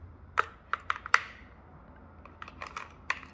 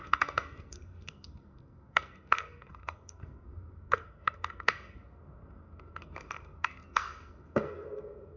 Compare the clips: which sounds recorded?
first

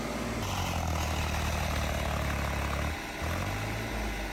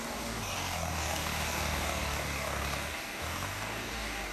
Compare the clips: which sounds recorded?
first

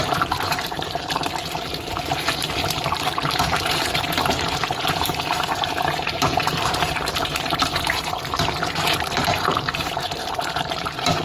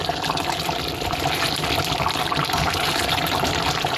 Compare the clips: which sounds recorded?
second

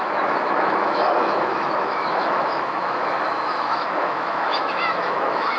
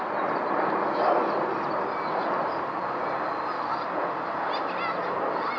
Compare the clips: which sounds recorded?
second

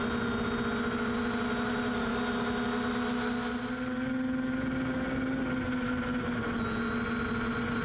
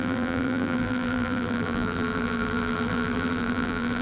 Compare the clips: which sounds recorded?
first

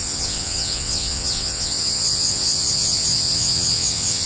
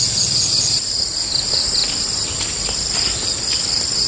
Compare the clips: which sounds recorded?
second